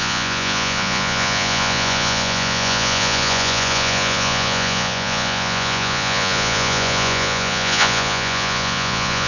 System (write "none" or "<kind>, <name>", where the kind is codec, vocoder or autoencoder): vocoder, Vocos